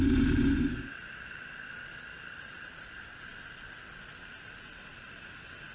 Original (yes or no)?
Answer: yes